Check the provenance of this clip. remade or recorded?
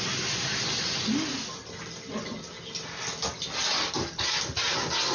recorded